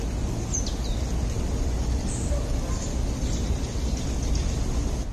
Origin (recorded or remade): recorded